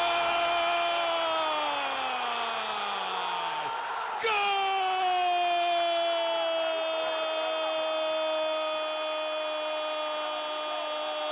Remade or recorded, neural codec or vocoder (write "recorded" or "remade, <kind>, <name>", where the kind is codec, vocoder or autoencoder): recorded